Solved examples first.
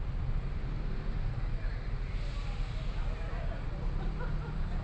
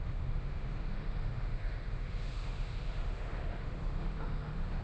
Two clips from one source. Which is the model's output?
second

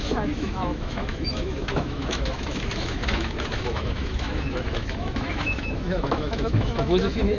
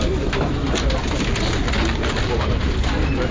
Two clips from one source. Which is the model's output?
first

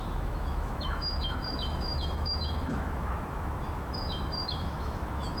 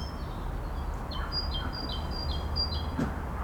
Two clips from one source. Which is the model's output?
first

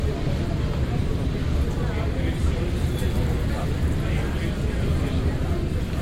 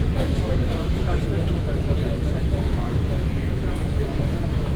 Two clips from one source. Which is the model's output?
second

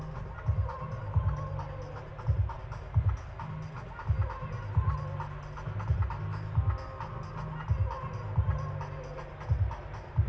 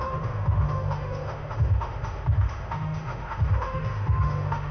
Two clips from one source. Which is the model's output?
second